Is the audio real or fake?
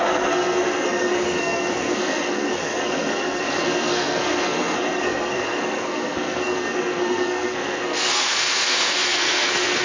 fake